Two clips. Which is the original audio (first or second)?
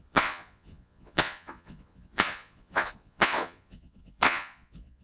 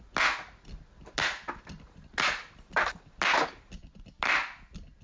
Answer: second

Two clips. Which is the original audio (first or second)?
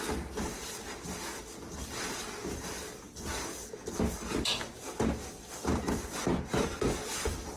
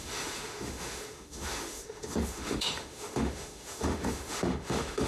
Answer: first